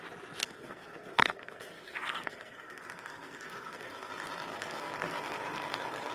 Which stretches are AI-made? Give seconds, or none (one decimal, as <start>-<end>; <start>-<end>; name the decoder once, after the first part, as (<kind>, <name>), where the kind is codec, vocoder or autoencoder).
0.4-4.1 (codec, SNAC); 4.5-6.1